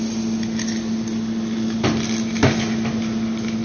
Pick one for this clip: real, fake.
real